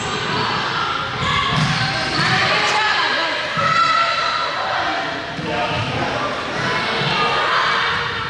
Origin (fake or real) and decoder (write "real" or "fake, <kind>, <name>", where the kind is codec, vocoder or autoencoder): real